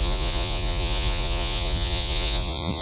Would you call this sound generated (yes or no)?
yes